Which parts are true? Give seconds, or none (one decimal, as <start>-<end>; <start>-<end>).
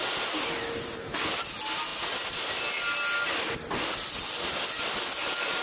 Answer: 0.0-5.6